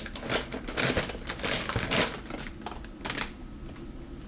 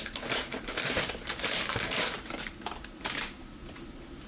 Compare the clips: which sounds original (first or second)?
first